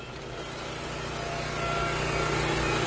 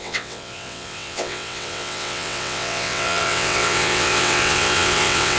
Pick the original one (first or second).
first